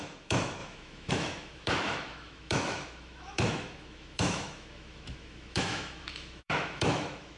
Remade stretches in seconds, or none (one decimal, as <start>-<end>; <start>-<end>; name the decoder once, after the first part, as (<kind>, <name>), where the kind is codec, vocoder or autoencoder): 0.0-7.4 (autoencoder, DAC-VAE)